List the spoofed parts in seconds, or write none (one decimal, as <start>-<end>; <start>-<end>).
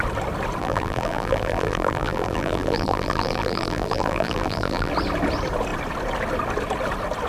0.6-4.9